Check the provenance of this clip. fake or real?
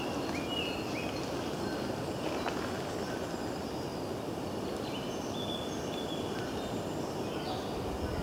real